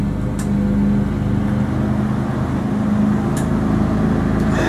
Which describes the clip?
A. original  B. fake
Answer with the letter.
A